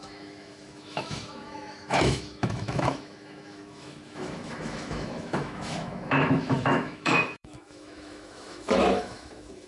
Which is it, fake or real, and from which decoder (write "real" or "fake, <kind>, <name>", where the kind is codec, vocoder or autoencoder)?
fake, autoencoder, DAC-VAE